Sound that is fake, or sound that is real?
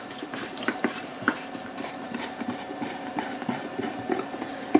fake